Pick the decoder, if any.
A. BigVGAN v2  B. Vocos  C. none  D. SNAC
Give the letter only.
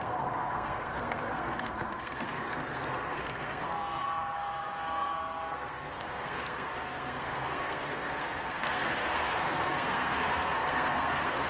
D